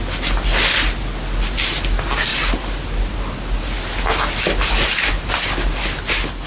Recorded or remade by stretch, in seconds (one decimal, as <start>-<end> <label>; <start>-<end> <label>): 0.0-6.5 recorded